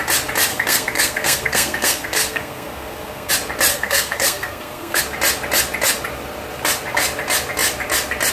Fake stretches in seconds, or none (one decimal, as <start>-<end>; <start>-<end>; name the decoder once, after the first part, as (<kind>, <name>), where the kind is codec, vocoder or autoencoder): 0.5-3.3 (codec, SNAC); 3.7-5.0